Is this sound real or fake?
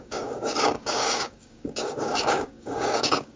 fake